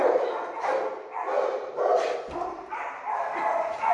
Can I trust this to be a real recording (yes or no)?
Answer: yes